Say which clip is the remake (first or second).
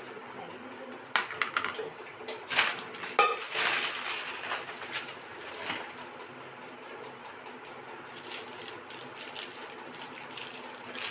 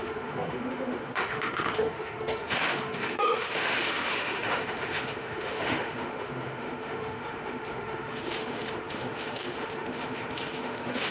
second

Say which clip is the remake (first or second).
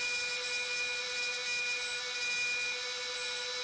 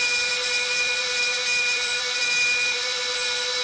second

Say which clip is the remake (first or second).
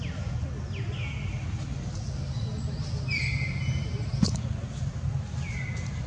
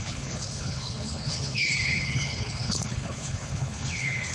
second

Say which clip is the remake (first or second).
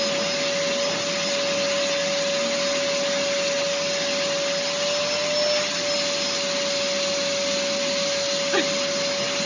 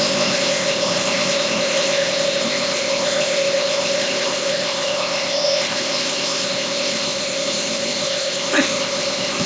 second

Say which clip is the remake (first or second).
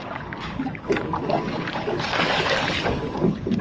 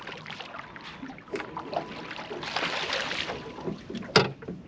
first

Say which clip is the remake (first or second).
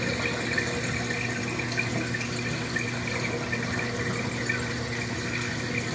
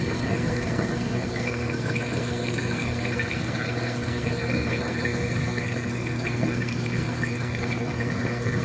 second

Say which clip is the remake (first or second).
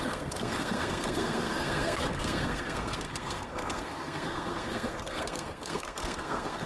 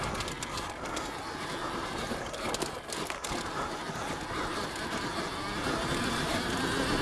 first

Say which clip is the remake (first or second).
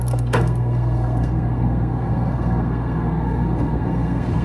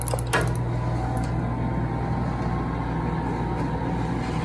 first